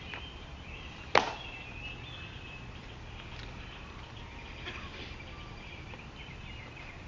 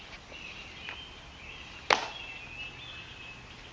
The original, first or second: second